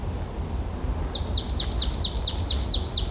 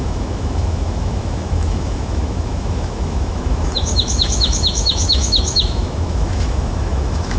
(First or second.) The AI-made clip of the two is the second